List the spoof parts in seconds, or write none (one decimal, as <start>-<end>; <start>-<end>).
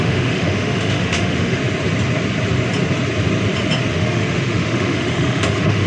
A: 0.0-1.6; 3.9-5.9